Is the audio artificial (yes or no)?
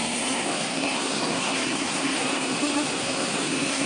yes